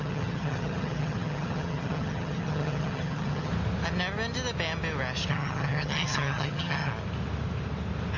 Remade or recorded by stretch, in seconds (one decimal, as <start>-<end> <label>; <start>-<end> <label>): 0.0-3.5 remade; 3.5-5.3 recorded; 5.3-6.9 remade; 6.9-8.2 recorded